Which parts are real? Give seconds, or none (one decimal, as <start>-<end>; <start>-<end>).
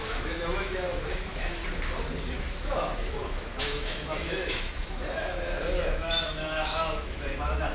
1.6-2.4